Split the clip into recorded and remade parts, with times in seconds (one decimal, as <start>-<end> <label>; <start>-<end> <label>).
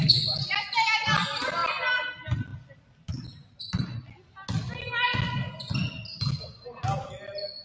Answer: 0.0-7.6 recorded